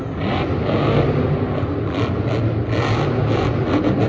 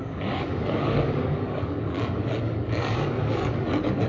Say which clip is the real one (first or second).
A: first